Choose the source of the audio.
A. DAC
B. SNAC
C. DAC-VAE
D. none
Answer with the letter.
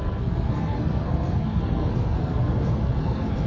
B